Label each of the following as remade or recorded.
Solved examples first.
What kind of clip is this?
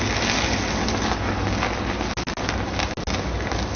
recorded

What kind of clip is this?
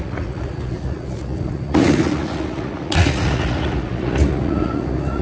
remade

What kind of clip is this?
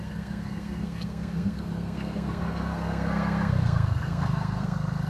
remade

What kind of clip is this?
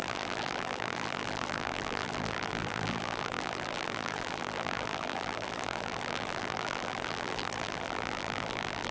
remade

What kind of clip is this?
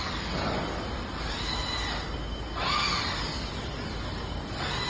recorded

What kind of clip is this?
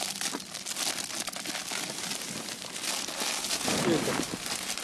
recorded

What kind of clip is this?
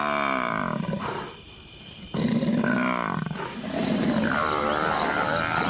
recorded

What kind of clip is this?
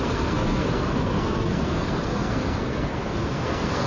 remade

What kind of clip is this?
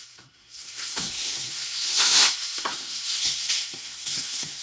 remade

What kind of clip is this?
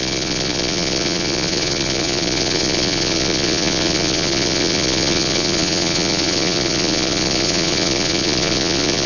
remade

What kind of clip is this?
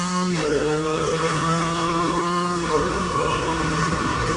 remade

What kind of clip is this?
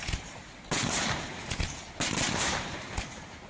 recorded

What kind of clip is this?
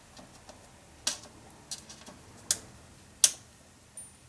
recorded